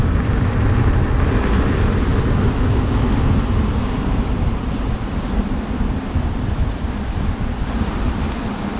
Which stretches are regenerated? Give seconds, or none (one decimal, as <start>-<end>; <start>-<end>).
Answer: 0.0-2.1; 3.8-8.8